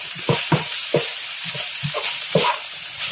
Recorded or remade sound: remade